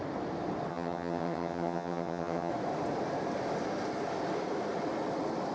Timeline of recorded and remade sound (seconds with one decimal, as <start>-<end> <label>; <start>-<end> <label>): 0.0-0.7 recorded; 0.7-2.5 remade; 2.5-5.5 recorded